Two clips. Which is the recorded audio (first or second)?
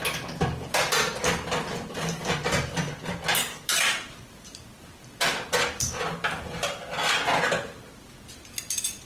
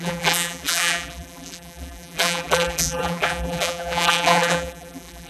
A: first